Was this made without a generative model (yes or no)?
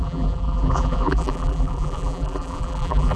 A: no